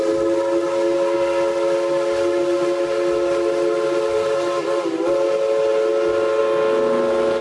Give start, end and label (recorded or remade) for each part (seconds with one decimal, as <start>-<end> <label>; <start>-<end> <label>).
0.0-7.4 recorded